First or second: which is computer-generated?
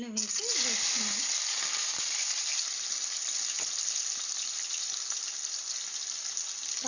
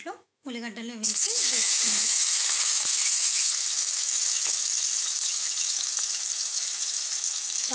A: second